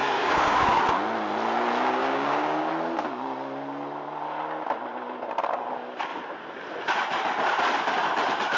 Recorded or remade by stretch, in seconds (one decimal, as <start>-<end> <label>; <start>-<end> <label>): 0.0-0.8 remade; 0.8-2.0 recorded; 2.0-2.7 remade; 2.7-8.6 recorded